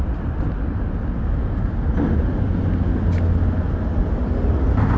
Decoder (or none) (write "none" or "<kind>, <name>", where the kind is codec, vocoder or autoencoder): none